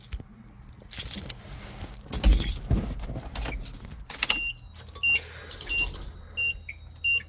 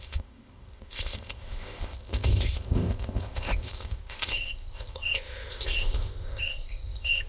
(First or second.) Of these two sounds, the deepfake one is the second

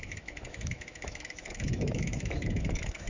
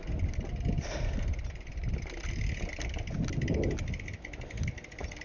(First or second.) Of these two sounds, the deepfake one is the first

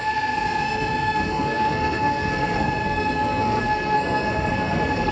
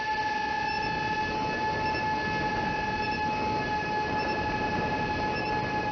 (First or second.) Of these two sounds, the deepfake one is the first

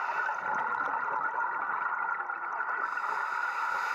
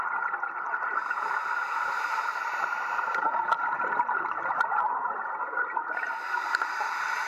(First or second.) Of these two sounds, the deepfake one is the second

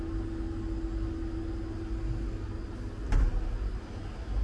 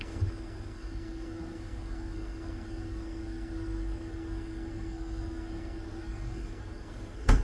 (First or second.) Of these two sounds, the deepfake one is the second